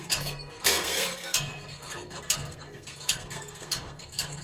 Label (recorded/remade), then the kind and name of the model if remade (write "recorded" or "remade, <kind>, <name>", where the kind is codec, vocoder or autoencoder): remade, codec, SNAC